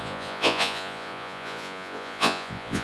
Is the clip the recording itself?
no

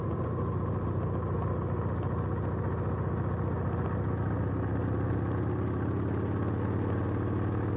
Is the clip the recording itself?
yes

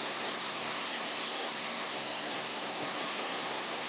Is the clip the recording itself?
no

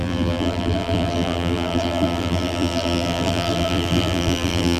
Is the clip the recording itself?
no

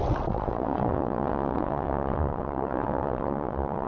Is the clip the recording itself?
no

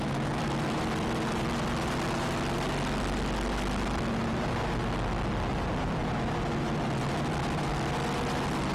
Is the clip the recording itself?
yes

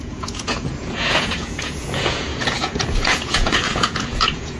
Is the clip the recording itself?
no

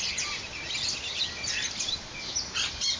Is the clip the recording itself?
yes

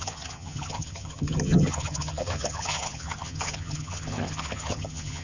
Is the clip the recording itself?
no